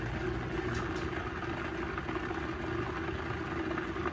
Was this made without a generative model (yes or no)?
yes